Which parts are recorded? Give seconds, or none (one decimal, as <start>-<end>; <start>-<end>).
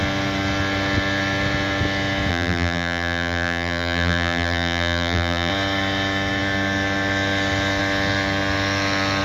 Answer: 0.0-2.3; 5.5-9.2